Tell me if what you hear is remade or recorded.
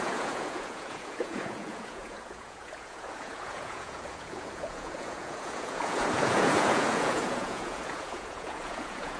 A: remade